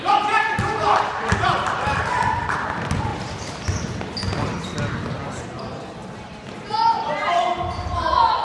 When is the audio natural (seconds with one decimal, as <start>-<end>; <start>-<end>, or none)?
0.0-3.1; 3.8-8.4